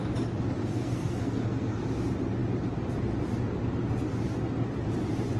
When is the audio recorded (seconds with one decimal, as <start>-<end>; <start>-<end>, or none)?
0.0-0.6; 1.8-5.4